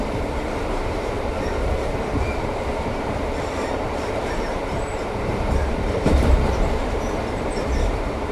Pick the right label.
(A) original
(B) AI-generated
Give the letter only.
B